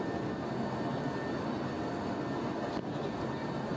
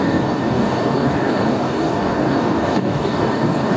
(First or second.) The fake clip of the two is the second